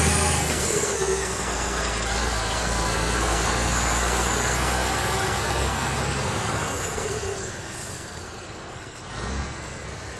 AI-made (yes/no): yes